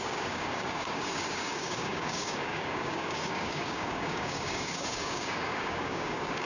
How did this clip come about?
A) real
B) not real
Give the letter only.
B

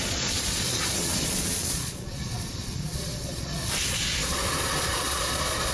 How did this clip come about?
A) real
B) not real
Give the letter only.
B